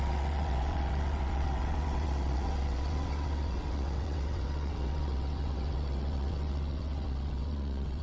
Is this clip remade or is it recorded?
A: remade